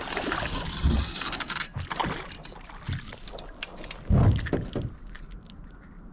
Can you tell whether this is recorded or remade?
recorded